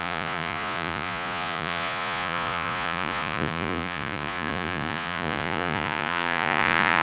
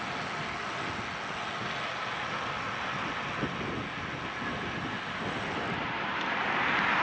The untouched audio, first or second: second